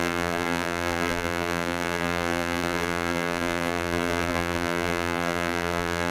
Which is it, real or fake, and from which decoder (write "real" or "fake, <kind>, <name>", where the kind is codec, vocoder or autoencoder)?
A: fake, vocoder, BigVGAN v2